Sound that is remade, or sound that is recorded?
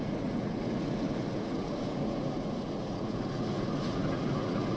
remade